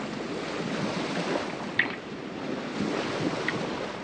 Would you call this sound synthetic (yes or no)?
no